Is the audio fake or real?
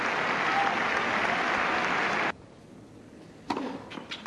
real